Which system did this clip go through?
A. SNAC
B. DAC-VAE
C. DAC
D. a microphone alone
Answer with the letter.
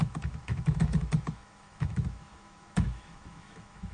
B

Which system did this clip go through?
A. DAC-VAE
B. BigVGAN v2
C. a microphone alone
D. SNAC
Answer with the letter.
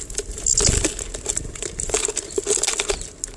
C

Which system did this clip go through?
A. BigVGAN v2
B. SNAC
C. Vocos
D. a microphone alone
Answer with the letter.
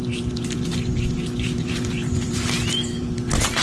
A